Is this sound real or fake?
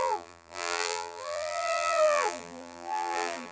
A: fake